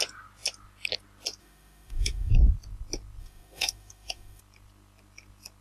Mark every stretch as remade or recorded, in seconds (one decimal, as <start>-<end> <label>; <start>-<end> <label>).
0.0-1.4 recorded; 1.4-2.3 remade; 2.3-3.2 recorded; 3.2-4.4 remade; 4.4-5.6 recorded